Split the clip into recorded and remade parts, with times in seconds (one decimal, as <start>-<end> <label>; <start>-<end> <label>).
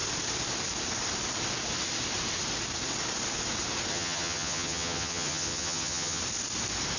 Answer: 0.0-3.9 recorded; 3.9-6.2 remade; 6.2-7.0 recorded